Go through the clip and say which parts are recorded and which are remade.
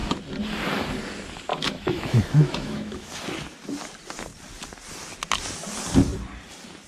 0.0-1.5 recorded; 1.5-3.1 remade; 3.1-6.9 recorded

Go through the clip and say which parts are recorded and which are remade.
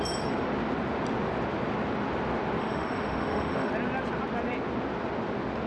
0.0-2.6 recorded; 2.6-3.7 remade; 3.7-5.7 recorded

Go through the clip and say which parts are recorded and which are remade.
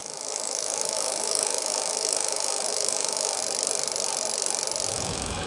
0.0-3.4 remade; 3.4-4.9 recorded; 4.9-5.5 remade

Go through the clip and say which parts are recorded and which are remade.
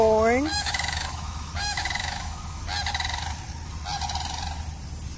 0.0-0.5 recorded; 0.5-2.6 remade; 2.6-5.2 recorded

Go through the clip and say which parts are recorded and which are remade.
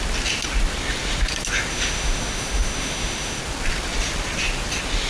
0.0-1.7 recorded; 1.7-3.4 remade; 3.4-5.1 recorded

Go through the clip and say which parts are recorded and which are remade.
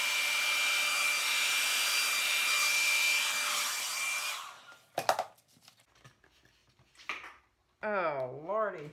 0.0-8.9 recorded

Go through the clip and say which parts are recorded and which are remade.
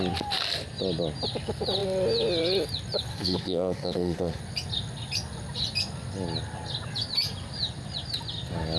0.0-3.1 recorded; 3.1-4.4 remade; 4.4-8.8 recorded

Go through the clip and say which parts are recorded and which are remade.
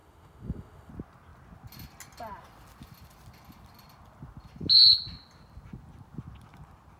0.0-0.9 remade; 0.9-7.0 recorded